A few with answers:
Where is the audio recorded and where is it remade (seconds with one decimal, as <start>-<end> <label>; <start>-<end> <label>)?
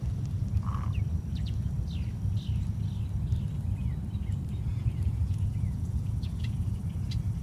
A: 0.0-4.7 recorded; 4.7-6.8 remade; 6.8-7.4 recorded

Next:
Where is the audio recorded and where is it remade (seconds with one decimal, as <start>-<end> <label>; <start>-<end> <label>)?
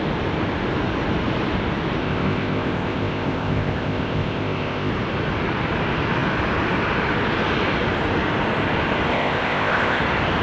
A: 0.0-2.0 recorded; 2.0-4.9 remade; 4.9-9.1 recorded; 9.1-10.0 remade; 10.0-10.4 recorded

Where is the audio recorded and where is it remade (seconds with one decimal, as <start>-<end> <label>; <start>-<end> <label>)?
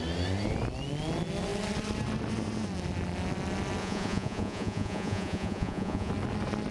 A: 0.0-3.8 recorded; 3.8-6.1 remade; 6.1-6.7 recorded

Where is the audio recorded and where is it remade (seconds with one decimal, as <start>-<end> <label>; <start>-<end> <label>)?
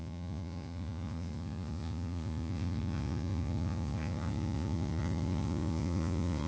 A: 0.0-6.5 remade